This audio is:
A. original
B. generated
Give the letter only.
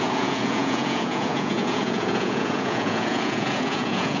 B